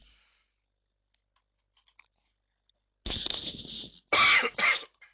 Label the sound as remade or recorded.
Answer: recorded